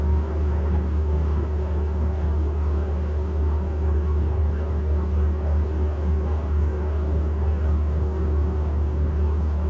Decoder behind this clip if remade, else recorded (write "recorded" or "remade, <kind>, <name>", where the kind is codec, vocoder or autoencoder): remade, codec, DAC